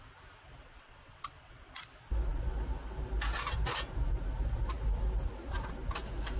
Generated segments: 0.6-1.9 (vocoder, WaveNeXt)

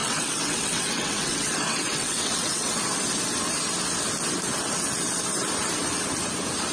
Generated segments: 0.0-2.8 (vocoder, WaveNeXt)

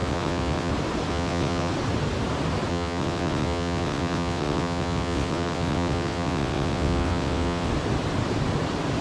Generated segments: 0.0-0.7 (vocoder, WaveNeXt); 1.1-1.7; 2.7-7.7

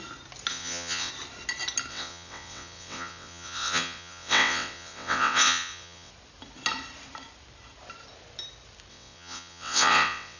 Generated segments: 0.5-1.1 (vocoder, WaveNeXt); 1.9-6.1; 8.9-10.4

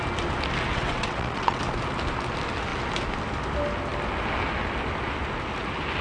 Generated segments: 0.7-1.6 (vocoder, WaveNeXt)

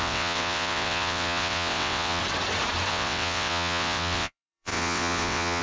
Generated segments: 0.0-2.2 (vocoder, WaveNeXt); 2.9-5.6